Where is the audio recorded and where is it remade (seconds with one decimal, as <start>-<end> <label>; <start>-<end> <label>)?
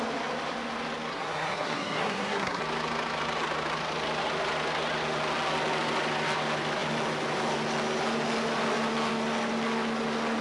0.0-1.1 recorded; 1.1-2.6 remade; 2.6-10.4 recorded